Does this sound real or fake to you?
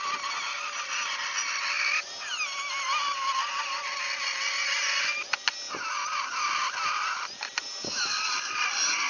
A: real